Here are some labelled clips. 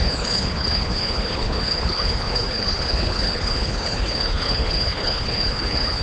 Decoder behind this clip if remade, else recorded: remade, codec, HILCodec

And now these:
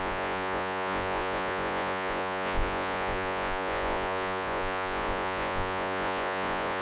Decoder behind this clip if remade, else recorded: remade, vocoder, Vocos